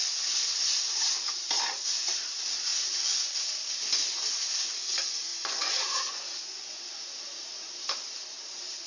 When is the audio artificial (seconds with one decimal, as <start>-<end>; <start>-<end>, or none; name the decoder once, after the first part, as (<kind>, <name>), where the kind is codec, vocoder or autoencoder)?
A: 5.3-6.8 (vocoder, Vocos)